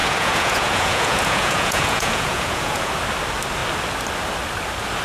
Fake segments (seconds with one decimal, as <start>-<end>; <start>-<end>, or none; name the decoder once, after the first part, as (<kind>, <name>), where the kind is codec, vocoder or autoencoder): 0.0-2.9 (vocoder, Vocos)